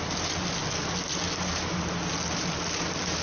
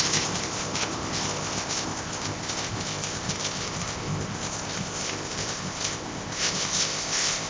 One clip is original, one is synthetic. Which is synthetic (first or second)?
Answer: second